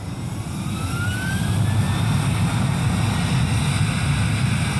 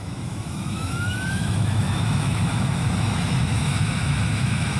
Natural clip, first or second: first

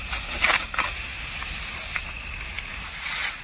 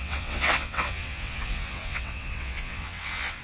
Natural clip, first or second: first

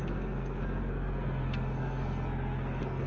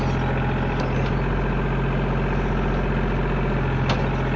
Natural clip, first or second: second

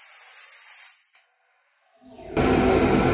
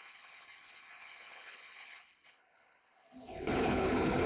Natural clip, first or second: first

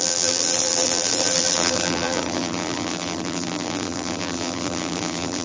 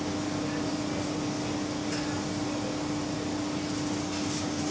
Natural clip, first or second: second